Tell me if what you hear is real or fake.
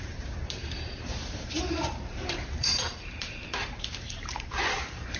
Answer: fake